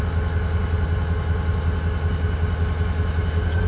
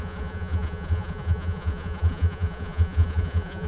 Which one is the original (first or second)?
first